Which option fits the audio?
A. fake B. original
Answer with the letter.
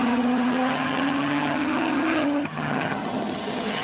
A